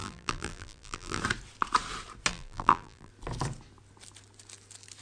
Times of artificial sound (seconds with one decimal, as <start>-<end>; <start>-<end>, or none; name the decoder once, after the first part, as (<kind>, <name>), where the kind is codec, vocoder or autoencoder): 0.0-1.2 (vocoder, BigVGAN v2); 2.3-3.1